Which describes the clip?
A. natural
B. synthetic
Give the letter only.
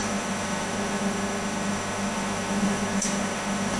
B